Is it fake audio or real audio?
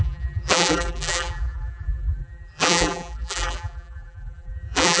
fake